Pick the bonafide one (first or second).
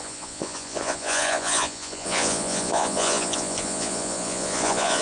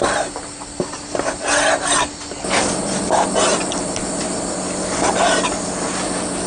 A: second